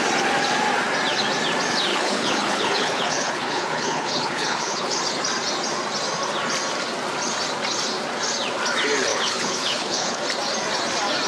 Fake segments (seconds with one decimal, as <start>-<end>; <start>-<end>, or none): 1.9-5.0; 9.1-10.2